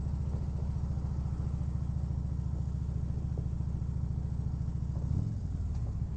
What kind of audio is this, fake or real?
real